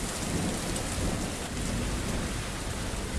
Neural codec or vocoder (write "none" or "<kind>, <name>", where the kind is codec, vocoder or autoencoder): vocoder, BigVGAN v2